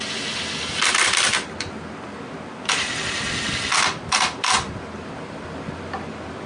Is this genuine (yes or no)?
no